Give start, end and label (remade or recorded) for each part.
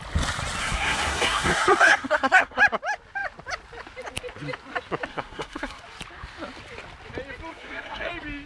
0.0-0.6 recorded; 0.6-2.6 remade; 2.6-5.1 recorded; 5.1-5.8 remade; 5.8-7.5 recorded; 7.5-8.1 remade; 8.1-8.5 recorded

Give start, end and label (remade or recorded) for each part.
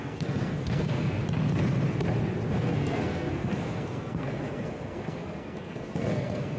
0.0-1.2 remade; 1.2-2.5 recorded; 2.5-6.6 remade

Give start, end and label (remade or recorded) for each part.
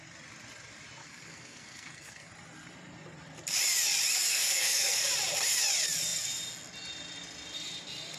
0.0-1.0 recorded; 1.0-2.3 remade; 2.3-4.3 recorded; 4.3-5.1 remade; 5.1-8.2 recorded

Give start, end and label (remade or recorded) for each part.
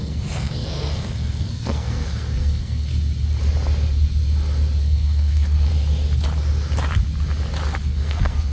0.0-2.9 remade; 2.9-4.8 recorded; 4.8-5.7 remade; 5.7-7.8 recorded; 7.8-8.5 remade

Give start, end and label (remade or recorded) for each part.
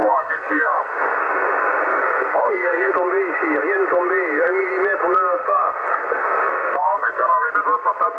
0.0-1.3 remade; 1.3-1.9 recorded; 1.9-2.9 remade; 2.9-5.4 recorded; 5.4-7.5 remade; 7.5-8.2 recorded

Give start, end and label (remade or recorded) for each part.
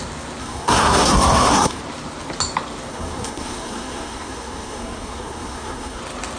0.0-0.4 recorded; 0.4-1.8 remade; 1.8-2.9 recorded; 2.9-6.0 remade; 6.0-6.4 recorded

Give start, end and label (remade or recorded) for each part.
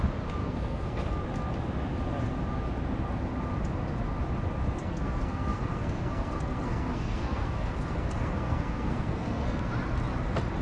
0.0-0.4 recorded; 0.4-1.0 remade; 1.0-4.8 recorded; 4.8-9.7 remade; 9.7-10.6 recorded